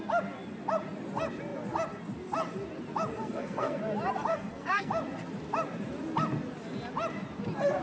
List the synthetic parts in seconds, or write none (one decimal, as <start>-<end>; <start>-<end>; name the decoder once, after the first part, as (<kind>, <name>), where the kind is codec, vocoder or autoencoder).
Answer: 3.2-3.8 (codec, SNAC); 4.3-4.9